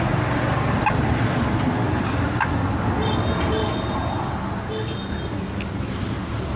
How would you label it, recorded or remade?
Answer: recorded